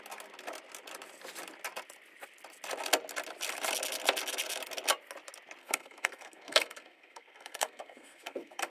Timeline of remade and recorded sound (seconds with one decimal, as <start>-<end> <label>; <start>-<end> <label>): 0.0-5.6 recorded; 5.6-8.7 remade